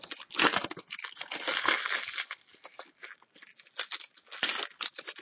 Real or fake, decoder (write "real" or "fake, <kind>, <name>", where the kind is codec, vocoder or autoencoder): real